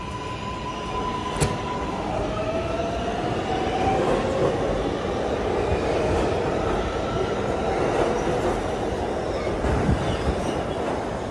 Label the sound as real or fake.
real